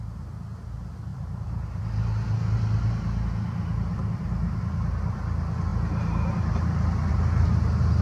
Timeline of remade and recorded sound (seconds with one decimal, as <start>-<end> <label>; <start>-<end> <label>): 0.0-1.1 recorded; 1.1-1.8 remade; 1.8-3.9 recorded; 3.9-4.6 remade; 4.6-8.0 recorded